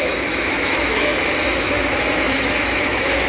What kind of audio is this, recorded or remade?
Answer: remade